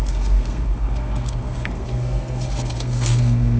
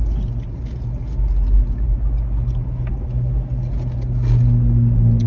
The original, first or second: second